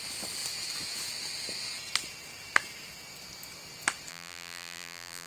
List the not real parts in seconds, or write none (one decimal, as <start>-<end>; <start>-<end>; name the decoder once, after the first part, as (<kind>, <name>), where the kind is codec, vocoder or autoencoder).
4.1-5.3 (vocoder, BigVGAN v2)